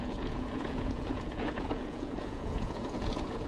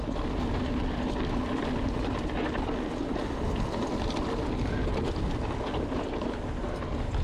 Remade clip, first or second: first